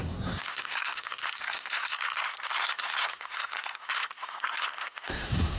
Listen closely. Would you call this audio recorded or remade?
remade